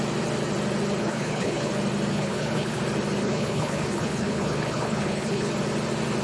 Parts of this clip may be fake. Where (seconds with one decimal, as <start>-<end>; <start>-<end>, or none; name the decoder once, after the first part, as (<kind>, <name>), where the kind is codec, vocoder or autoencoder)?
1.0-1.7 (codec, HILCodec); 2.1-2.8; 3.2-5.5